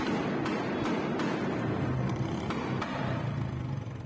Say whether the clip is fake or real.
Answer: real